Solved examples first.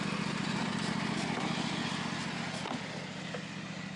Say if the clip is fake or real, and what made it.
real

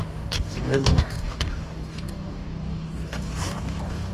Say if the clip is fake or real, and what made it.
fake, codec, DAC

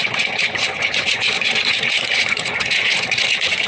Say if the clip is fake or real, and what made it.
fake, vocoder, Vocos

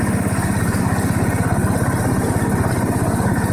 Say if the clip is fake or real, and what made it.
real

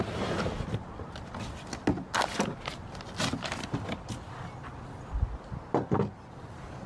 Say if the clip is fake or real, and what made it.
real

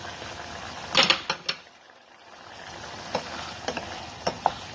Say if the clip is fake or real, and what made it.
real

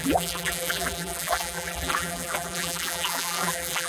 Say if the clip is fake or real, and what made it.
fake, vocoder, BigVGAN v2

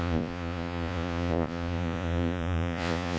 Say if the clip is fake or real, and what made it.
fake, vocoder, Vocos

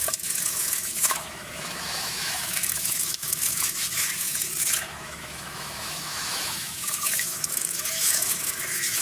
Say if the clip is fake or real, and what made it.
fake, autoencoder, DAC-VAE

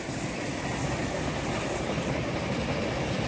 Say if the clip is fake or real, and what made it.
real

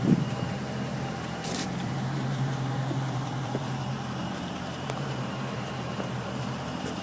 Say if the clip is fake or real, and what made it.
fake, vocoder, BigVGAN v2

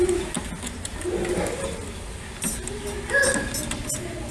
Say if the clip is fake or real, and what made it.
real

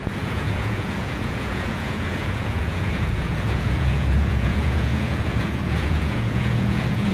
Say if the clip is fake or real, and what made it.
fake, vocoder, Vocos